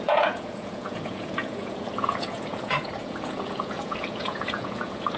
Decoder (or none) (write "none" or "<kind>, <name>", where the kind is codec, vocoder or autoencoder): vocoder, Vocos